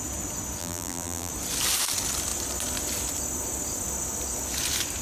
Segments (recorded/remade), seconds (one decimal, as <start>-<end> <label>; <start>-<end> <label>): 0.0-0.6 recorded; 0.6-1.3 remade; 1.3-5.0 recorded